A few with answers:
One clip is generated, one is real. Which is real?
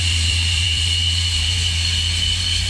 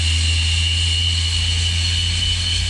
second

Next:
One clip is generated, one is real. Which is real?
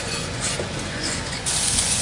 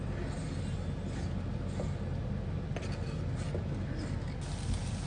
second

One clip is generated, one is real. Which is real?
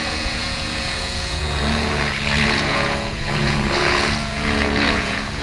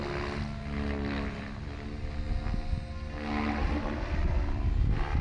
second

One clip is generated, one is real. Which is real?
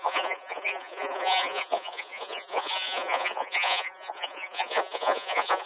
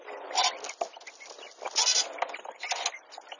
second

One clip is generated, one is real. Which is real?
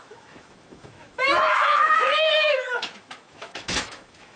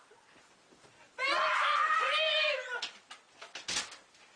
second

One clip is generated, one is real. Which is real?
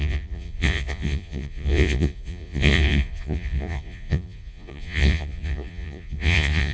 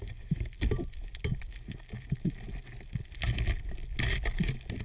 second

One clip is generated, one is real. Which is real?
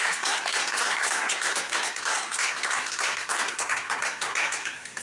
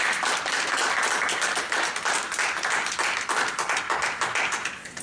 second